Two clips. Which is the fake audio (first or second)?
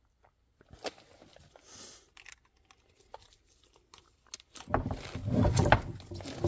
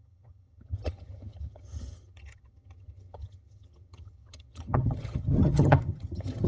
second